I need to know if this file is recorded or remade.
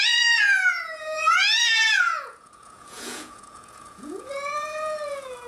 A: remade